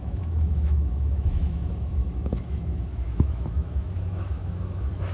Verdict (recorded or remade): remade